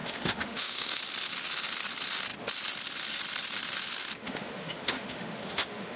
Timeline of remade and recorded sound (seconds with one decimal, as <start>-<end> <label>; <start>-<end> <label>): 0.0-1.0 remade; 1.0-4.2 recorded; 4.2-6.0 remade